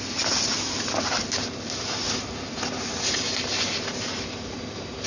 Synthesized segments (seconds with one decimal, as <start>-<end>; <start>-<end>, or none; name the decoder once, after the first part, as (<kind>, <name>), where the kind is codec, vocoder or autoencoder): 1.2-4.3 (vocoder, BigVGAN v2)